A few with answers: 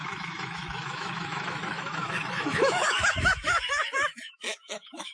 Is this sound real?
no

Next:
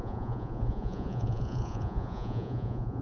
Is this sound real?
no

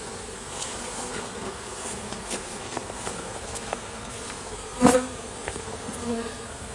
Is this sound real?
no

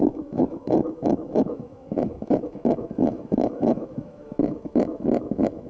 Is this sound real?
no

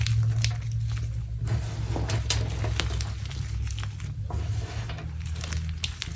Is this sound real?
yes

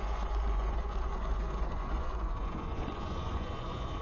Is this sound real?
no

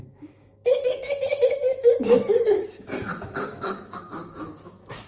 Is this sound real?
no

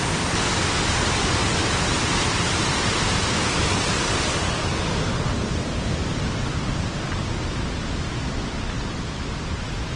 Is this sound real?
yes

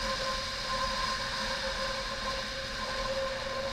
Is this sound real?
yes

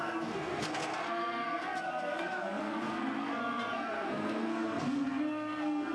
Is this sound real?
no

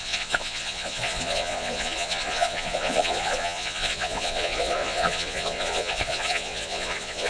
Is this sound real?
no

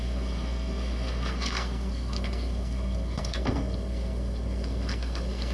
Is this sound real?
no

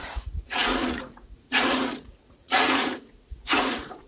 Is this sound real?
no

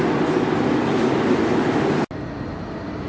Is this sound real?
yes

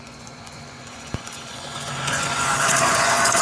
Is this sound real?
no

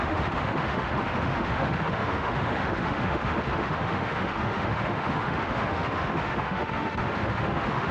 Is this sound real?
no